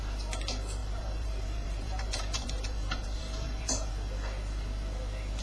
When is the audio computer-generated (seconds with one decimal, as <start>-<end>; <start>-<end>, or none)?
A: 0.8-3.9